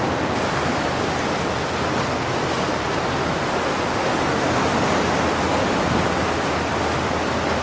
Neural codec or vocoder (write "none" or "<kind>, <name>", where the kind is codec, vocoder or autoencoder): none